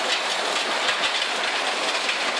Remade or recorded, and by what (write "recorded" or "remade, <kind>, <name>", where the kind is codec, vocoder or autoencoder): recorded